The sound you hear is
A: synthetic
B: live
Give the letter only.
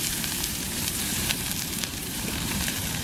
A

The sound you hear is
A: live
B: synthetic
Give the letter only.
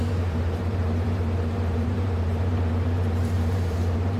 B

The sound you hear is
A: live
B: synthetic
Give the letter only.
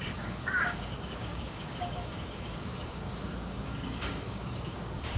B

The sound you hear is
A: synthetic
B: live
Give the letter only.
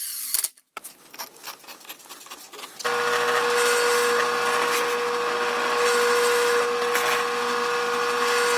B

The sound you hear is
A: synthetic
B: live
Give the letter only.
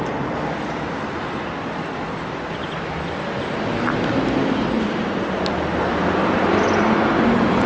B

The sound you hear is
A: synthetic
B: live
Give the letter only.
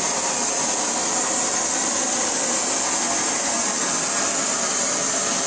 B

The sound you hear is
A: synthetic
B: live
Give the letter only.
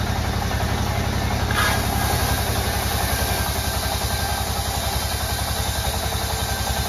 B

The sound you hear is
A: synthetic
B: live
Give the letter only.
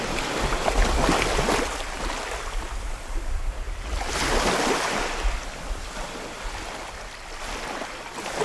B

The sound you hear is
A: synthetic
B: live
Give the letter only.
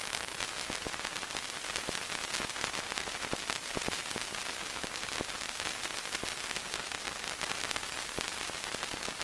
B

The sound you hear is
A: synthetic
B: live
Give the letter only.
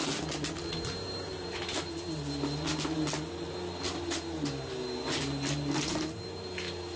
B